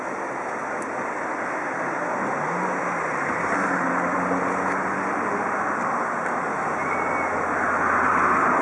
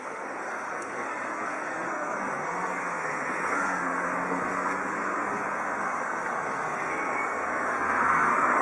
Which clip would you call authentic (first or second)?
first